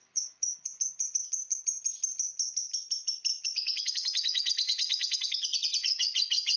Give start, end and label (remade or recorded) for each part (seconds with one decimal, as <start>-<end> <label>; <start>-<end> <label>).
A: 0.0-3.3 recorded; 3.3-6.6 remade